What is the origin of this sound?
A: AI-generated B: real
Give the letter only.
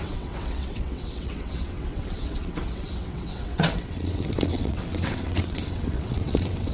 A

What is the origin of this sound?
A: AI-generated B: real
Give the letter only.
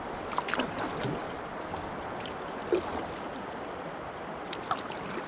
B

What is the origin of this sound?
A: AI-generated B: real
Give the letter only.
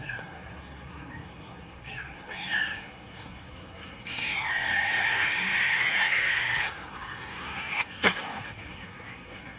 A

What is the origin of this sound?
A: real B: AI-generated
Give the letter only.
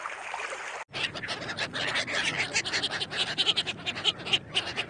A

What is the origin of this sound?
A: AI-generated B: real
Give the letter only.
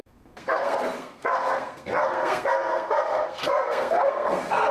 A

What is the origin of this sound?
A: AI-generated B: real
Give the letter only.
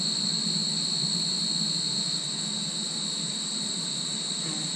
B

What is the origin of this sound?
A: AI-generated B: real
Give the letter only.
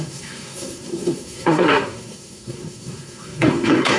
A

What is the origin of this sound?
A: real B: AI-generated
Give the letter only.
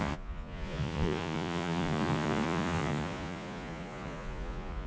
B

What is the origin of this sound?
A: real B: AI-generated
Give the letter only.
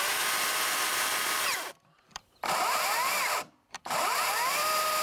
B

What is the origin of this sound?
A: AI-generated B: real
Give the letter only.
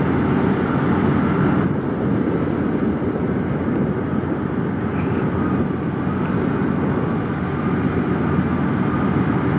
B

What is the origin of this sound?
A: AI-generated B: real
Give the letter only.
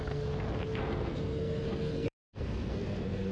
A